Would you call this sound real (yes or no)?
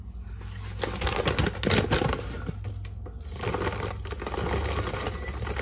yes